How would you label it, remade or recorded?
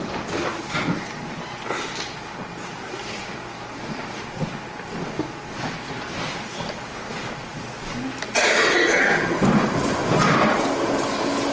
recorded